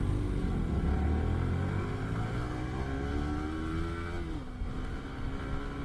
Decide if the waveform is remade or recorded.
recorded